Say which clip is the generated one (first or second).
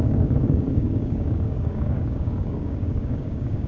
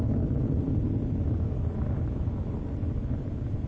first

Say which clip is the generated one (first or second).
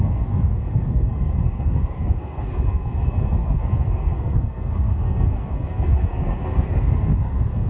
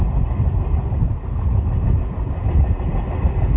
first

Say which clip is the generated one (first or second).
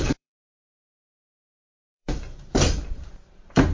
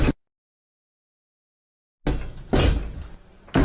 first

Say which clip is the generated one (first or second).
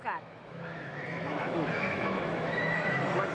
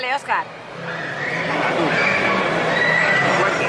first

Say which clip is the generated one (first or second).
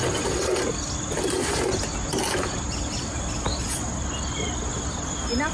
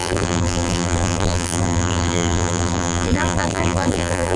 second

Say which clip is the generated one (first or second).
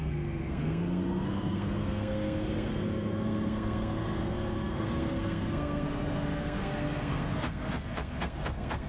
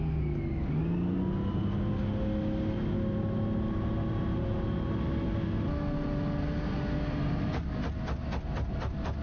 first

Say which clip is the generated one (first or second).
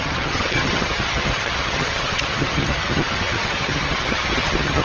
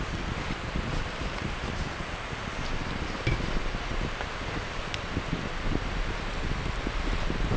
first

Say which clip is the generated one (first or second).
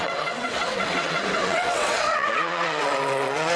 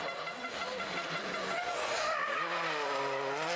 first